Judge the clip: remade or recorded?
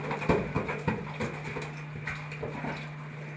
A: recorded